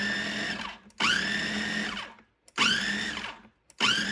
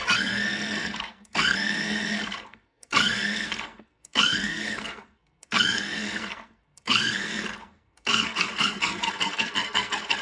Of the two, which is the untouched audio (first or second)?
first